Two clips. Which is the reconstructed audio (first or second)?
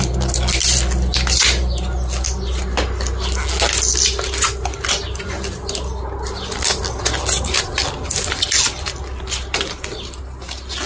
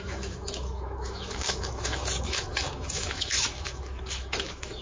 second